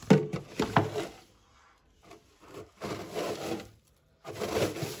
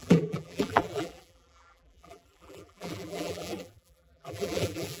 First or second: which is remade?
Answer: second